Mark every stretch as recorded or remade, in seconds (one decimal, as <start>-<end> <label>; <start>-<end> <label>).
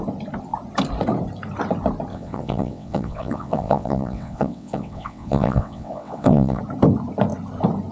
0.0-2.1 recorded; 2.1-6.6 remade; 6.6-7.9 recorded